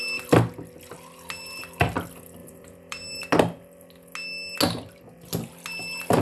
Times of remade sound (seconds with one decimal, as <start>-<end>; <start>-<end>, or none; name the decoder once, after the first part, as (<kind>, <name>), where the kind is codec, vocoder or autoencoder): 2.4-3.2 (vocoder, BigVGAN v2)